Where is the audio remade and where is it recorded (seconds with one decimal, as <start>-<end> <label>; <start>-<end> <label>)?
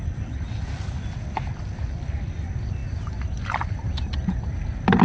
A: 0.0-5.0 recorded